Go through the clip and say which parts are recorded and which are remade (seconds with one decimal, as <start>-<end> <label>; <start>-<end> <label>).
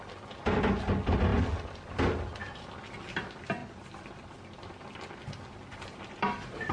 0.0-3.6 recorded; 3.6-4.6 remade; 4.6-5.7 recorded; 5.7-6.7 remade